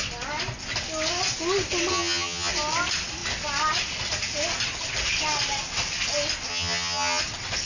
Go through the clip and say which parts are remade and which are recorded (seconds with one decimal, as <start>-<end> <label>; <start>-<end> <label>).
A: 0.0-1.9 recorded; 1.9-2.5 remade; 2.5-6.5 recorded; 6.5-7.2 remade; 7.2-7.7 recorded